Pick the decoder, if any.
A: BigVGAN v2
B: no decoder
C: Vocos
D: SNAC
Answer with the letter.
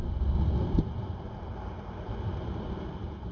B